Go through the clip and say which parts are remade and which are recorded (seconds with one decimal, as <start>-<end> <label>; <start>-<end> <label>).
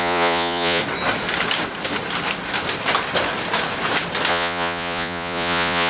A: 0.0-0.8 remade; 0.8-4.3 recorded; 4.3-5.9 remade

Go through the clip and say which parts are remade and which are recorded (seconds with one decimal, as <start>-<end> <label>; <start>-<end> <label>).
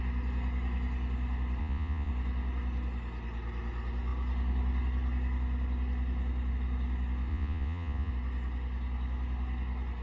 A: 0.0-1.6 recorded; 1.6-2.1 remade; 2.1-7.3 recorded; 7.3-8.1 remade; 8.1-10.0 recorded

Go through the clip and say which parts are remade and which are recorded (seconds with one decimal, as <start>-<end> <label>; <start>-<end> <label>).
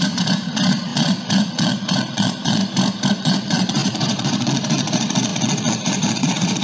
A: 0.0-2.6 remade; 2.6-3.1 recorded; 3.1-6.6 remade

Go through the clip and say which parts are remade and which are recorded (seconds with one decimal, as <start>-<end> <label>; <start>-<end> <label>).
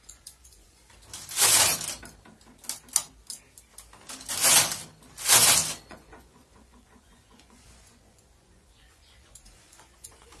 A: 0.0-0.8 remade; 0.8-5.9 recorded; 5.9-10.4 remade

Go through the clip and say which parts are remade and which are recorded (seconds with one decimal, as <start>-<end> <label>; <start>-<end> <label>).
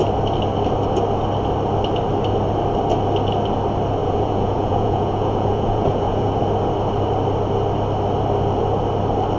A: 0.0-4.0 recorded; 4.0-6.4 remade; 6.4-9.4 recorded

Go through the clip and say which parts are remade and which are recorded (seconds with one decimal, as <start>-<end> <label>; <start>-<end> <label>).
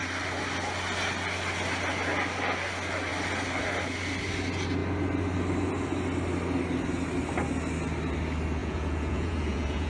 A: 0.0-8.6 recorded; 8.6-9.9 remade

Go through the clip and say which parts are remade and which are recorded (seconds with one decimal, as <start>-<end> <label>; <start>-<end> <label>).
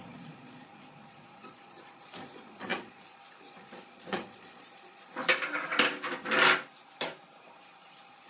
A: 0.0-5.2 remade; 5.2-7.4 recorded; 7.4-8.3 remade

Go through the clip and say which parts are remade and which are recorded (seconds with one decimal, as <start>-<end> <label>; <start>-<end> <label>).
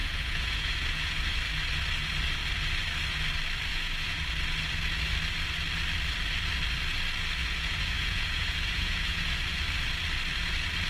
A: 0.0-1.2 remade; 1.2-3.7 recorded; 3.7-4.2 remade; 4.2-7.4 recorded; 7.4-9.4 remade; 9.4-10.9 recorded